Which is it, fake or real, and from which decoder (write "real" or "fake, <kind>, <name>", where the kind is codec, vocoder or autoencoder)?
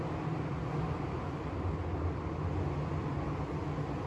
real